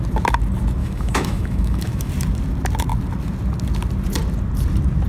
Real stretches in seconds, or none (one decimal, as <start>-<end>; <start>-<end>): 0.0-0.8; 2.1-5.1